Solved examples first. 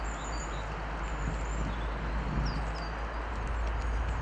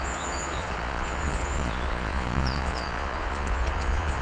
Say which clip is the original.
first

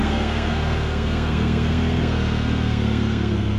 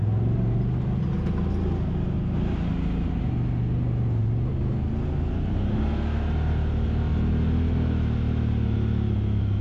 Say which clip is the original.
second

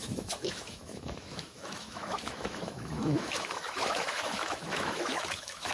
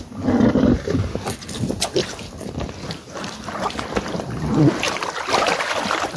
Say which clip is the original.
second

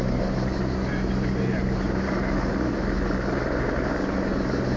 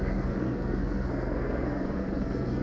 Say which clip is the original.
first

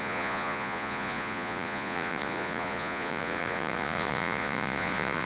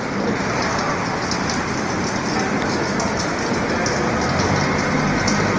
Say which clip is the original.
second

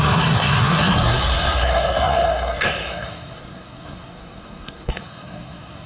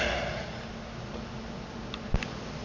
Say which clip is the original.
second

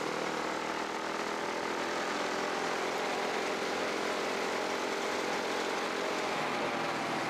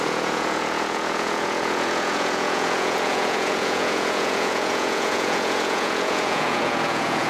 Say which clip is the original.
first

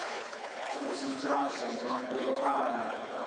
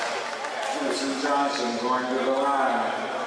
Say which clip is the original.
second